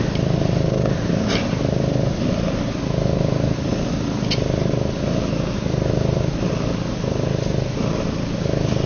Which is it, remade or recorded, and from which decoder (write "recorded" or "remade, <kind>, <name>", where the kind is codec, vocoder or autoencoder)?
recorded